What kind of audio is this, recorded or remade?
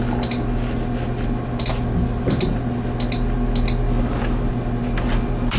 recorded